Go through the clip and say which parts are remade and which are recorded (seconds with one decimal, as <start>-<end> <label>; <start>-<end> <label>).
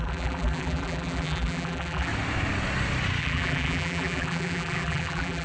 0.0-2.1 remade; 2.1-3.2 recorded; 3.2-5.4 remade